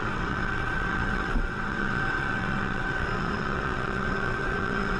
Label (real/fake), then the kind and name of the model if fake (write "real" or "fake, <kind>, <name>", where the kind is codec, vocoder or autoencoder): fake, vocoder, WaveNeXt